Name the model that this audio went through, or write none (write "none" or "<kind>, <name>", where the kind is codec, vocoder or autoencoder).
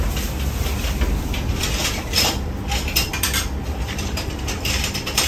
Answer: none